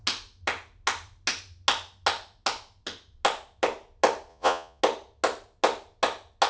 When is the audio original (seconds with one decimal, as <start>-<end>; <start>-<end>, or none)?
0.0-4.3; 4.8-6.5